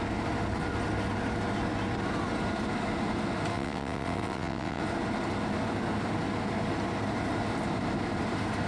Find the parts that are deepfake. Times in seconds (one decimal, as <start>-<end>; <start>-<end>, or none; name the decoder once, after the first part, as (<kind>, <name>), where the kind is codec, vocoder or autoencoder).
3.5-4.8 (vocoder, WaveNeXt)